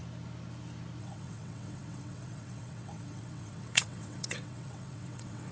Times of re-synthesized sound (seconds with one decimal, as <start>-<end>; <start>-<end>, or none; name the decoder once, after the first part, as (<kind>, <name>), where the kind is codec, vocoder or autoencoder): 1.0-5.5 (vocoder, WaveNeXt)